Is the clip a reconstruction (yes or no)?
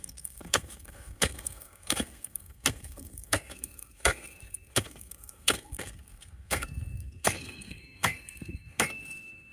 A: yes